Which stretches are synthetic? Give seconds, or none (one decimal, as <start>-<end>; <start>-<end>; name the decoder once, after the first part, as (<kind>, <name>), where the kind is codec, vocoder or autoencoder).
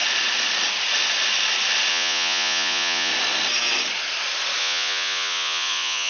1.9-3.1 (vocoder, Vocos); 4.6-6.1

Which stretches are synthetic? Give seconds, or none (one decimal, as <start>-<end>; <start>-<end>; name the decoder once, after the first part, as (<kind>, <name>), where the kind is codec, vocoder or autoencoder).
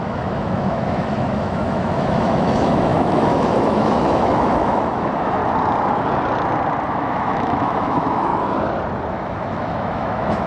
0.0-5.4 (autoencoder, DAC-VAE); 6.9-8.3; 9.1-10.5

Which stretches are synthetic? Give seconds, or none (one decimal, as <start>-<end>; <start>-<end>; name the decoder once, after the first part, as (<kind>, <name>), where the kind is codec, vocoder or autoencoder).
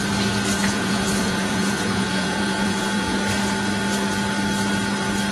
0.6-3.2 (vocoder, Vocos)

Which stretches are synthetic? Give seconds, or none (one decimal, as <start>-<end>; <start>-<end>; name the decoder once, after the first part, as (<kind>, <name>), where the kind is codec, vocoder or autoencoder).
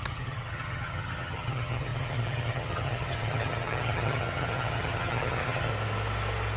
0.0-5.7 (vocoder, HiFi-GAN)